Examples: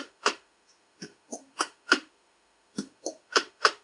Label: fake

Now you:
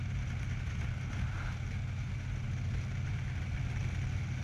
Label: real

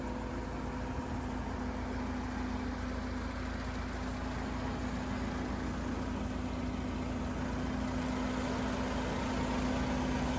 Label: real